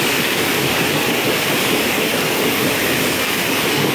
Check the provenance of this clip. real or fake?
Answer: fake